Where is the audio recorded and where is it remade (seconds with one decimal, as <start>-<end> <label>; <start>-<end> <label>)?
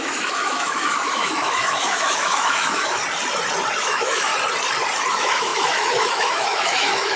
0.0-3.0 remade; 3.0-3.8 recorded; 3.8-4.3 remade; 4.3-5.1 recorded; 5.1-7.2 remade